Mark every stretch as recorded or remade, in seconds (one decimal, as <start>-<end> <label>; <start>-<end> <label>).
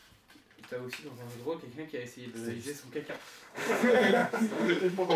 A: 0.0-3.1 recorded; 3.1-5.2 remade